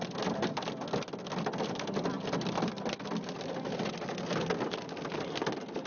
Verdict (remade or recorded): recorded